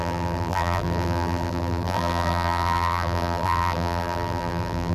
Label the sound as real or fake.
fake